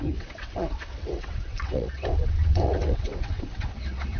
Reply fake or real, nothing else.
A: fake